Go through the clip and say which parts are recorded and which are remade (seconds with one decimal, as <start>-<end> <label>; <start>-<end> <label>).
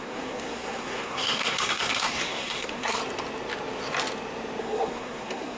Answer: 0.0-3.0 remade; 3.0-4.6 recorded; 4.6-5.6 remade